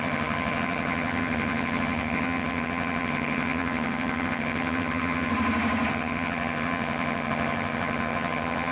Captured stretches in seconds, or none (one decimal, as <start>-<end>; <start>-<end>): 5.3-5.9